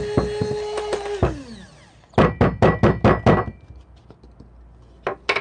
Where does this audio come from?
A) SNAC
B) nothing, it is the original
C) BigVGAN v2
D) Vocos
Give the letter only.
B